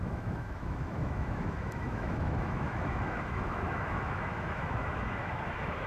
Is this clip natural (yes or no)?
no